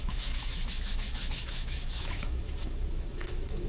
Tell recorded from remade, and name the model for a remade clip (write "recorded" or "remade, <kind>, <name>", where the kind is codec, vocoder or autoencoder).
remade, autoencoder, DAC-VAE